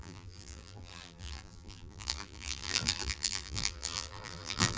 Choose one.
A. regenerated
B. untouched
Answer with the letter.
A